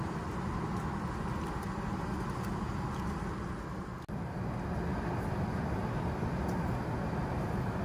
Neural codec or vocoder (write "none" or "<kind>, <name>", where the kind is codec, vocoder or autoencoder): none